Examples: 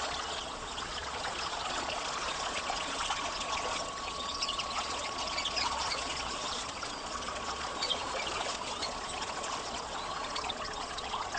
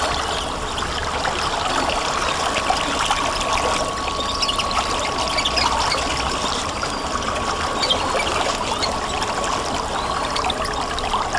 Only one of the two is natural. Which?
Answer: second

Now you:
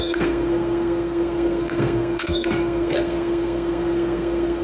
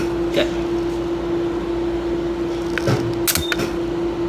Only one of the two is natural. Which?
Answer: second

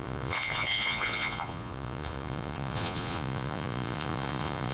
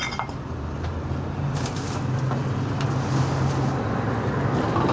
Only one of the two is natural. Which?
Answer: second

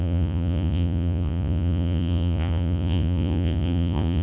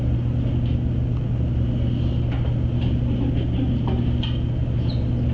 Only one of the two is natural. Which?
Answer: second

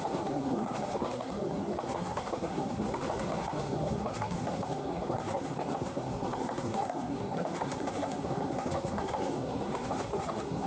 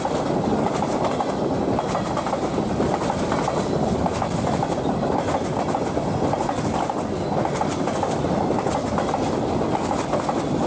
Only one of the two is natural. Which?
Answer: second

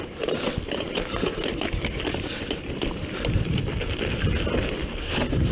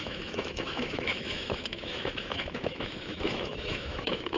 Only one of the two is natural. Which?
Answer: first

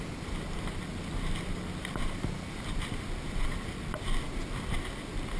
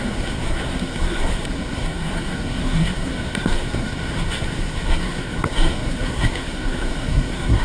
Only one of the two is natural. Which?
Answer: first